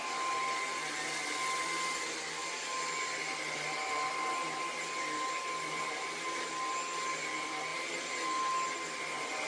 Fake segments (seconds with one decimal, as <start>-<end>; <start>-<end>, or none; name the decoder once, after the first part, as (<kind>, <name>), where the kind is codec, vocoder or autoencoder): none